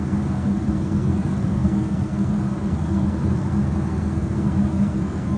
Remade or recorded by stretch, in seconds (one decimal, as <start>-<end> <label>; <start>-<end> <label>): 0.0-5.4 remade